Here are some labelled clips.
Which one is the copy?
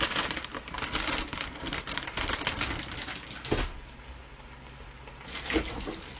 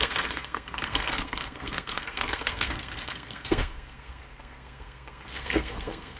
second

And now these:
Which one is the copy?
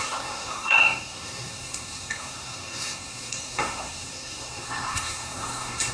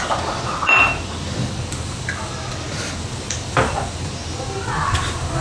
first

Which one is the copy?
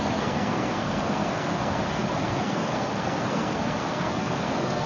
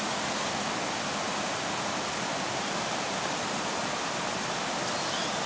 first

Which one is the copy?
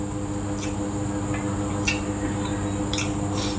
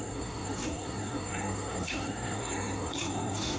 second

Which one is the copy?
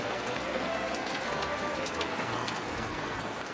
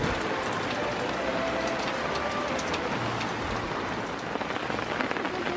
first